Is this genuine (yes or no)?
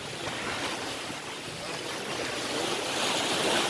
yes